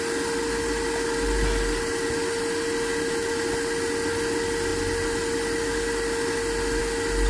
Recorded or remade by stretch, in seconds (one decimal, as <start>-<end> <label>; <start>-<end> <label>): 0.0-7.3 recorded